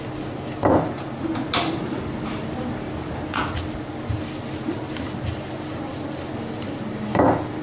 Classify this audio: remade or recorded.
recorded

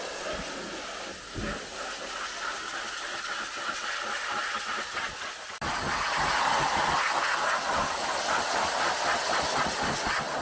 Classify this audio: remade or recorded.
recorded